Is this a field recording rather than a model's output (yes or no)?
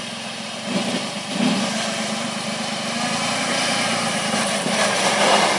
no